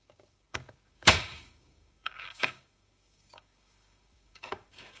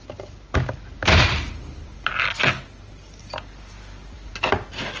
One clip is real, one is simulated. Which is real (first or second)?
second